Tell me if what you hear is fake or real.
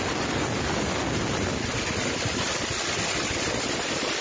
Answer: real